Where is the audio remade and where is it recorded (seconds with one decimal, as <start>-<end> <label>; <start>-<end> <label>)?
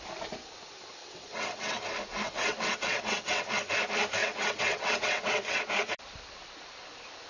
0.0-1.0 recorded; 1.0-1.8 remade; 1.8-2.2 recorded; 2.2-3.5 remade; 3.5-4.2 recorded; 4.2-5.9 remade; 5.9-7.3 recorded